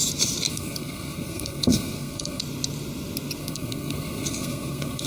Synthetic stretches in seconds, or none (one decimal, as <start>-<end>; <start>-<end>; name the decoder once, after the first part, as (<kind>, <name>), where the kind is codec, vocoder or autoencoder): 0.5-2.4 (codec, SNAC); 3.4-5.1